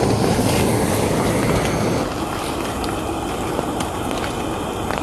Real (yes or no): yes